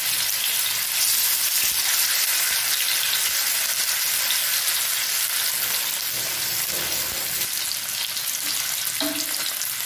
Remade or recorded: recorded